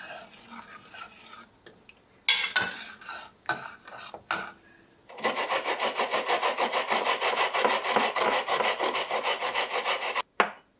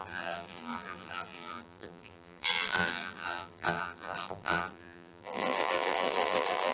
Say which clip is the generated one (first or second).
second